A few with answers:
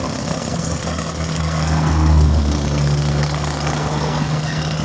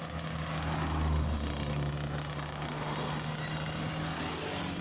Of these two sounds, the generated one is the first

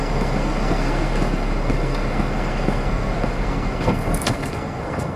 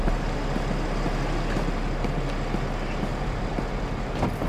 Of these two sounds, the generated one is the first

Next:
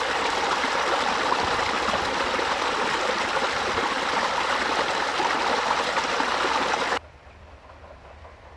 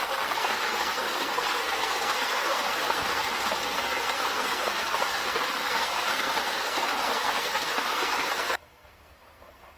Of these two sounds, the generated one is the second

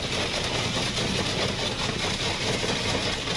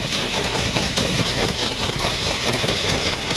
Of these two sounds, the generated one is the second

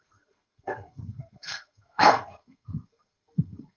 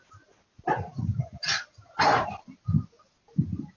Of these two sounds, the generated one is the first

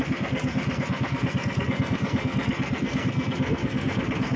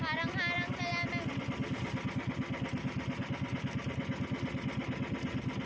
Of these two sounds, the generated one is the first